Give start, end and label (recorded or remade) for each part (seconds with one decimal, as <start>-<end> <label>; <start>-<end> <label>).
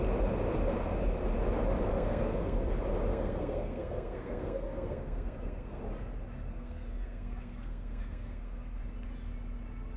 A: 0.0-1.9 recorded; 1.9-2.7 remade; 2.7-3.1 recorded; 3.1-5.8 remade; 5.8-6.5 recorded; 6.5-8.8 remade; 8.8-10.0 recorded